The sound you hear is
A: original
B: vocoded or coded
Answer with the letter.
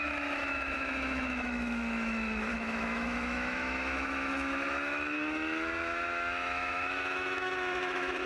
B